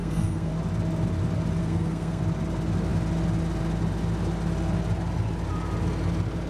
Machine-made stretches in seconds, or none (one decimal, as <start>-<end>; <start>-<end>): 0.0-0.5; 1.6-2.2